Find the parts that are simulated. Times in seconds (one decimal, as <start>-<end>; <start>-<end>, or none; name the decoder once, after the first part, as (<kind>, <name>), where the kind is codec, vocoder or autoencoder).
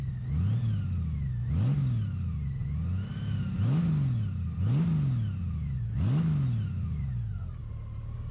none